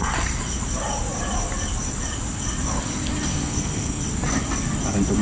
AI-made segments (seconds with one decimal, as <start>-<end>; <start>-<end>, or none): 3.3-4.0